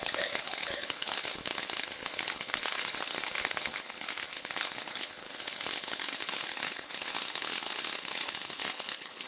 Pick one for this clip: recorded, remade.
remade